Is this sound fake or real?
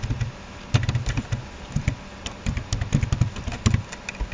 real